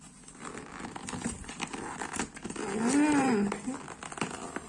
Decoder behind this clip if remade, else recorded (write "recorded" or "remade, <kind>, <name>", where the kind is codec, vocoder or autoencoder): recorded